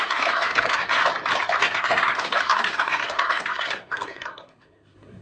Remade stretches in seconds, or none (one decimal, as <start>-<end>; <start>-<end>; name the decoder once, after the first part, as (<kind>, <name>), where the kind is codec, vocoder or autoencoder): 0.0-1.0 (codec, SNAC); 1.6-5.2

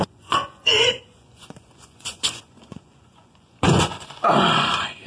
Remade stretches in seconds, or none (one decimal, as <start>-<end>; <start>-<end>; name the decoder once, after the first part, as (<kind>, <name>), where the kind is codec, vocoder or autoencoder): 0.0-5.1 (vocoder, Vocos)

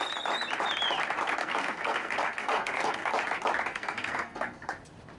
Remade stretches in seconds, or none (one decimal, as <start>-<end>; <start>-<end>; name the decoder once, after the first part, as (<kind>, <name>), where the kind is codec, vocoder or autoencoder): 1.4-3.1 (codec, SNAC); 3.7-4.8

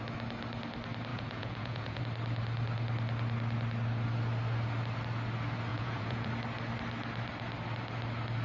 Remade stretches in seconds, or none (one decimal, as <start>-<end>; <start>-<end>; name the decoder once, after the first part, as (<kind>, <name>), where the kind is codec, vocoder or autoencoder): 1.1-2.0 (vocoder, Vocos); 5.7-6.3